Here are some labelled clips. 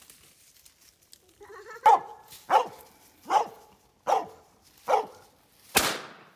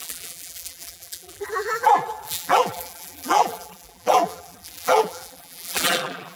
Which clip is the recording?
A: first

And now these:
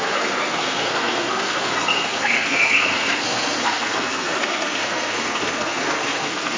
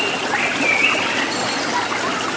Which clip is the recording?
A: second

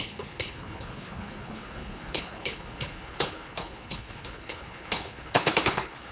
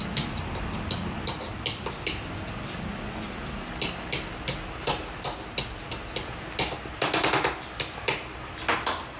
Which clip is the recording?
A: second